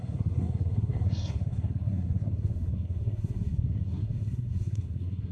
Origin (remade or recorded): remade